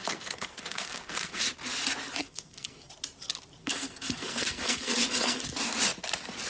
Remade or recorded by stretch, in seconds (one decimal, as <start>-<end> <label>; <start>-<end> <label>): 0.0-1.4 remade; 1.4-2.2 recorded; 2.2-2.9 remade; 2.9-3.6 recorded; 3.6-5.4 remade; 5.4-6.5 recorded